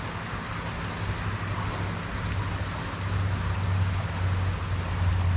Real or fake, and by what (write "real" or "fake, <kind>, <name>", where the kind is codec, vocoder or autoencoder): real